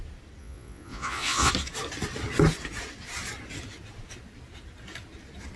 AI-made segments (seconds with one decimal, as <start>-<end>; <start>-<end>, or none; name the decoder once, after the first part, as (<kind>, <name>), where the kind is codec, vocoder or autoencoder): 0.4-1.5 (vocoder, Vocos)